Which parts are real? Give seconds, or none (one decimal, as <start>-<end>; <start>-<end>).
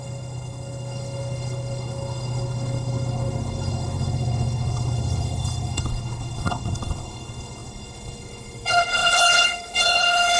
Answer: none